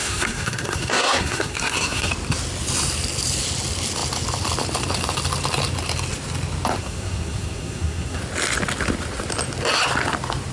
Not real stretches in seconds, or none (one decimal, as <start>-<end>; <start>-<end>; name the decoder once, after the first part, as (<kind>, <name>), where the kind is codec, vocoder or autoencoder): 0.0-2.1 (codec, SNAC); 6.8-8.2